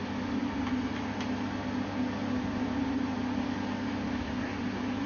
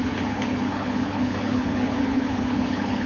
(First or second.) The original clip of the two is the first